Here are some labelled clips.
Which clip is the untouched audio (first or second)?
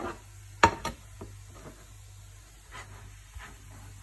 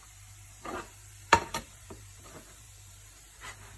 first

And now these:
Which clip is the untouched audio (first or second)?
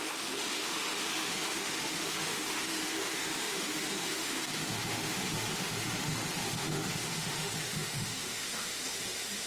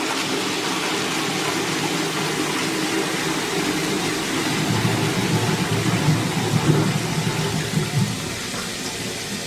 second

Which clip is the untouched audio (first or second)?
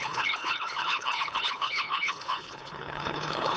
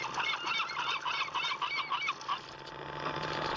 second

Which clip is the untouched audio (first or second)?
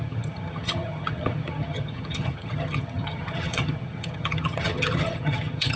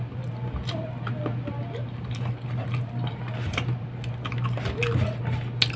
second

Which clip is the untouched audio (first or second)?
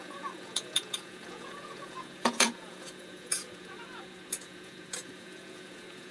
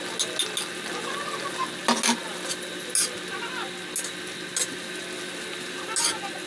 second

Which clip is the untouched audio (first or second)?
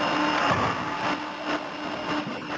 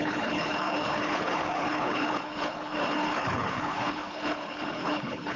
first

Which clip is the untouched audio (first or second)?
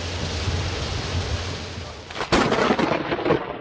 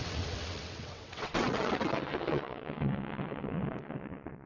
first